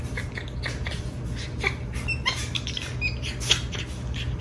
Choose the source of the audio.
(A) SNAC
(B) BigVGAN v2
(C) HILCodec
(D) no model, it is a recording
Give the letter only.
D